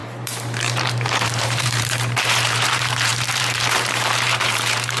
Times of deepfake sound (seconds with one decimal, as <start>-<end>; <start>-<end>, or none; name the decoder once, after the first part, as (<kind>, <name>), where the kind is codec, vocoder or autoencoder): 0.0-5.0 (vocoder, BigVGAN v2)